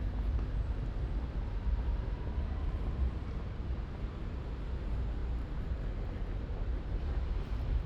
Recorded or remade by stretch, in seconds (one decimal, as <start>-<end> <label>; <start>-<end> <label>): 0.0-6.7 recorded; 6.7-7.3 remade; 7.3-7.9 recorded